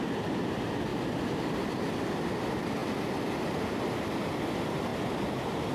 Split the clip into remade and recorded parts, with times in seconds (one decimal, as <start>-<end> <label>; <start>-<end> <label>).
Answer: 0.0-0.9 recorded; 0.9-2.2 remade; 2.2-5.7 recorded